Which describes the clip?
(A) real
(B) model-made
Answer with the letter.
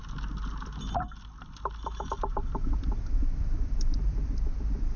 A